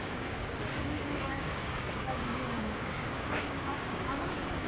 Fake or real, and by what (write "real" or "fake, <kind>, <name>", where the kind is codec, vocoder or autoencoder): fake, codec, DAC